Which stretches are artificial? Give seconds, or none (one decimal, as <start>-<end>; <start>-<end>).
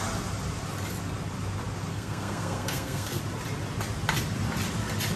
1.9-3.2